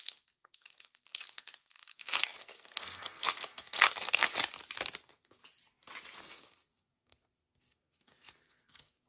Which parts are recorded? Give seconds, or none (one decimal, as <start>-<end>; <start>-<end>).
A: 4.3-5.0; 5.4-6.2